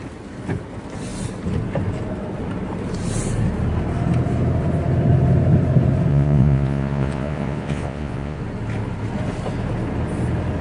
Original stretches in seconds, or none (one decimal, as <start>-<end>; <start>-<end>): 0.0-6.1; 8.4-10.6